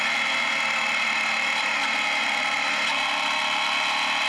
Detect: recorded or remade recorded